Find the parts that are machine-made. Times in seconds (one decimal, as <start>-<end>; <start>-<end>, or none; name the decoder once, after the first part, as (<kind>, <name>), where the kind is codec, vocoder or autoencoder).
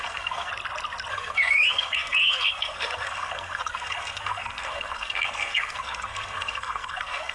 0.0-0.5 (codec, SNAC); 1.1-7.3